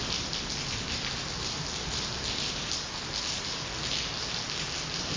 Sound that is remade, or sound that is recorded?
recorded